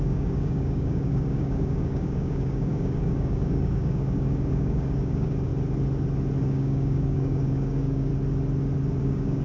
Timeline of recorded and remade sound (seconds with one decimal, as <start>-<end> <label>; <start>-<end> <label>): 0.0-5.5 remade; 5.5-6.4 recorded; 6.4-8.1 remade; 8.1-9.0 recorded; 9.0-9.4 remade